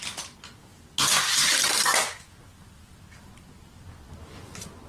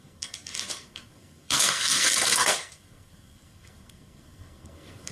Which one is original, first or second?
first